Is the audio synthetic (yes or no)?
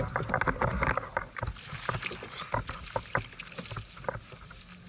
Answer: no